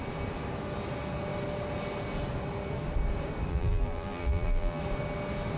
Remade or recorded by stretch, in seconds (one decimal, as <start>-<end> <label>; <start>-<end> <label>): 0.0-3.5 recorded; 3.5-4.8 remade; 4.8-5.6 recorded